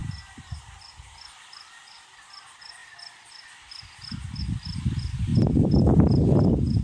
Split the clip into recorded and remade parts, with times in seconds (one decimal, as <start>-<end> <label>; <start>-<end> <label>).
0.0-5.3 recorded; 5.3-6.3 remade; 6.3-6.8 recorded